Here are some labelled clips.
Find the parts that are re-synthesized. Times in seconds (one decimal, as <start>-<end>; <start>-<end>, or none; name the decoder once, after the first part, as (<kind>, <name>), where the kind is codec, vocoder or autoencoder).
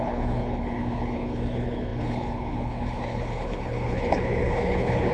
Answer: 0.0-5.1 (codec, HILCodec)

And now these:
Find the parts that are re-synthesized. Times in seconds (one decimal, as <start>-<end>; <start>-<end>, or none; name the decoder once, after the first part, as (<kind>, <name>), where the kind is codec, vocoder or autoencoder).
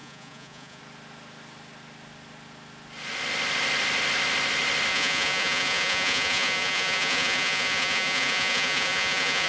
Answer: 0.0-0.8 (vocoder, Vocos); 4.9-9.5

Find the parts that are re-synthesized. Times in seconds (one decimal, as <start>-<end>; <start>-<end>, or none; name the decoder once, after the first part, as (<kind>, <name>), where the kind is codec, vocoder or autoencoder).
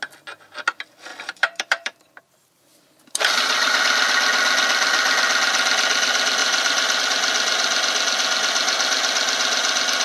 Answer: 1.1-2.2 (vocoder, BigVGAN v2); 2.7-3.8; 6.4-7.0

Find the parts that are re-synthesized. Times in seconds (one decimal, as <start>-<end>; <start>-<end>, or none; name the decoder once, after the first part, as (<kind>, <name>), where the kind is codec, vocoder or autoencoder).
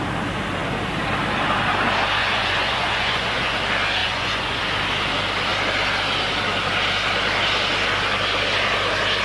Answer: 2.2-3.6 (vocoder, Vocos); 4.0-4.6